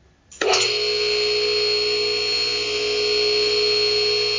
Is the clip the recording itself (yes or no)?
yes